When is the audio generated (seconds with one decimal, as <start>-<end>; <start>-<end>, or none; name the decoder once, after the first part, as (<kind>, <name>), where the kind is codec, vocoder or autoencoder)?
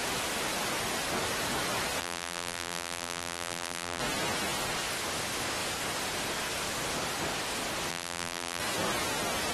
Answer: 2.0-4.0 (vocoder, BigVGAN v2); 7.9-8.6